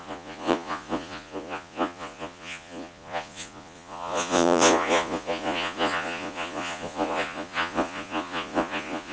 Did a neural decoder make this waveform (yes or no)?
yes